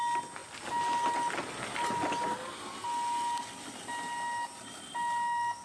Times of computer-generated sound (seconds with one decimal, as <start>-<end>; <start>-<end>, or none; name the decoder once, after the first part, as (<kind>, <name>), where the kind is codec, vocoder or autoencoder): none